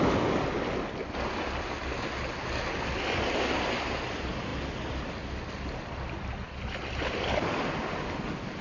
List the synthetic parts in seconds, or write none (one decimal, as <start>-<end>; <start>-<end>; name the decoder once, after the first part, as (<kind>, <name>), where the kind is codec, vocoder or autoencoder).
none